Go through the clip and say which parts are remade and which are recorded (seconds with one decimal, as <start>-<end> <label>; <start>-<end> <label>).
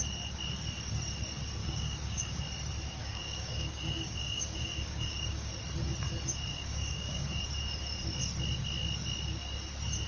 0.0-1.6 recorded; 1.6-2.4 remade; 2.4-3.0 recorded; 3.0-5.5 remade; 5.5-6.5 recorded; 6.5-7.4 remade; 7.4-10.1 recorded